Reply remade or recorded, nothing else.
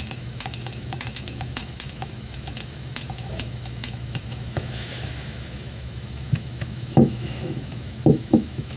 remade